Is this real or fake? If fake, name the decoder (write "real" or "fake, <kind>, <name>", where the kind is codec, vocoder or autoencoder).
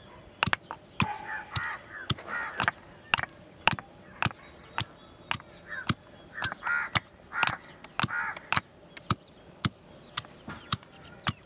real